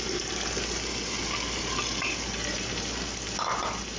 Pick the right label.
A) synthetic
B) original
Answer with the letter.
B